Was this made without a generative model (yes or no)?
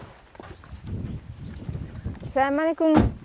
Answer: yes